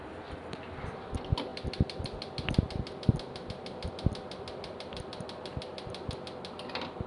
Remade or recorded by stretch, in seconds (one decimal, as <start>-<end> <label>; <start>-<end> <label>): 0.0-7.1 recorded

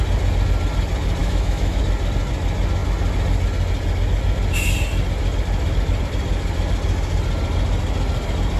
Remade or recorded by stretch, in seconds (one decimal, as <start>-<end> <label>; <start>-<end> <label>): 0.0-1.2 recorded; 1.2-1.8 remade; 1.8-8.6 recorded

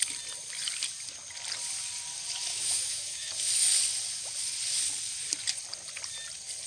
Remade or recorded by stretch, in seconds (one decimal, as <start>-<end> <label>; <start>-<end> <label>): 0.0-2.5 recorded; 2.5-3.3 remade; 3.3-6.7 recorded

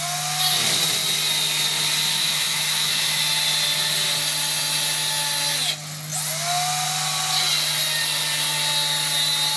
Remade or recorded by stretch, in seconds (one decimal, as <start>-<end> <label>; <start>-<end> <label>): 0.0-2.2 recorded; 2.2-3.2 remade; 3.2-9.6 recorded

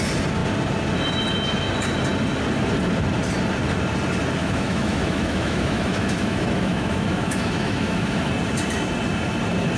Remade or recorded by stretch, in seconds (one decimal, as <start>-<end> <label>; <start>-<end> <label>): 0.0-4.4 recorded; 4.4-8.3 remade; 8.3-9.8 recorded